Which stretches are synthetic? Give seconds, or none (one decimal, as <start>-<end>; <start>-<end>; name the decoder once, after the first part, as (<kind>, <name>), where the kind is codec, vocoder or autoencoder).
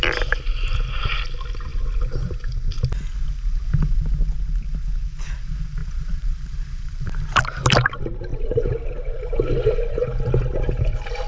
5.8-7.4 (vocoder, BigVGAN v2); 8.3-9.5